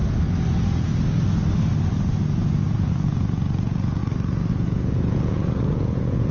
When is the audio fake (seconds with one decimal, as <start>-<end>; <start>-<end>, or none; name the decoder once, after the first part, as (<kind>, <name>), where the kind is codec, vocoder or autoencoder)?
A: 2.8-4.0 (vocoder, Vocos); 4.5-6.3

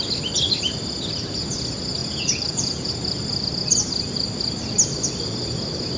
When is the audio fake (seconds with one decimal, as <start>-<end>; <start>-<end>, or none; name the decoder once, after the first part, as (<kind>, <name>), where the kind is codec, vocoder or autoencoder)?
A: 2.0-2.9 (vocoder, Vocos)

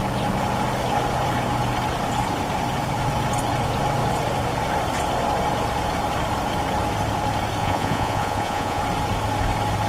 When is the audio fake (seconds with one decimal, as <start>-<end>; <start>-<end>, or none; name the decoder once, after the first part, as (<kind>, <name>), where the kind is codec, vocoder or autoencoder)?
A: 7.6-8.8 (vocoder, Vocos)

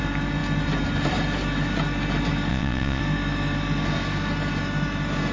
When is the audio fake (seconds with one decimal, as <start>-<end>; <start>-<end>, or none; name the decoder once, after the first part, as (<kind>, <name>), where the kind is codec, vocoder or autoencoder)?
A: 2.5-3.0 (vocoder, Vocos)

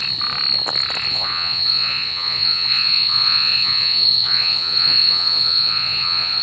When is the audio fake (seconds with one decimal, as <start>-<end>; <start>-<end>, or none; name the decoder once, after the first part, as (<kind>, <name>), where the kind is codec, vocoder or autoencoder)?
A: 1.1-6.4 (vocoder, Vocos)

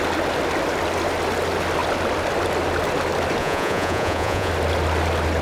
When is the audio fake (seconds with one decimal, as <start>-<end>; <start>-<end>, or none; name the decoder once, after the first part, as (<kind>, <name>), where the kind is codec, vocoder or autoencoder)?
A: 3.4-4.5 (vocoder, Vocos)